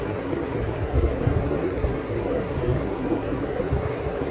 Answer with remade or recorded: remade